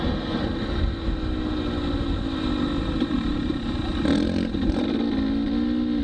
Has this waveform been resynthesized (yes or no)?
no